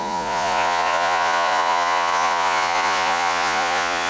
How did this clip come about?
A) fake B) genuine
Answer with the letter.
A